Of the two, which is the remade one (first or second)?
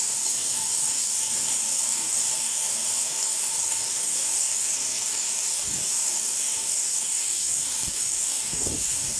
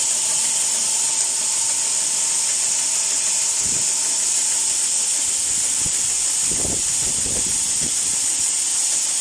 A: first